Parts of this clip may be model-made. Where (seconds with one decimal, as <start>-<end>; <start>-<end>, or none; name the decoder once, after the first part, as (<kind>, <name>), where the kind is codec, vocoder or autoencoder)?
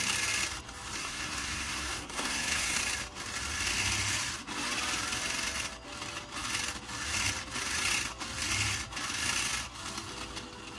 1.0-2.8 (codec, SNAC)